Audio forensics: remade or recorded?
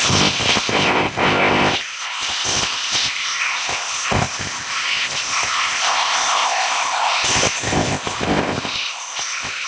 remade